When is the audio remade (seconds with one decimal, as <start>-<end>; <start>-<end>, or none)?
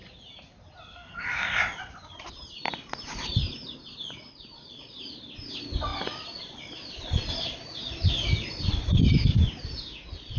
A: 0.9-1.6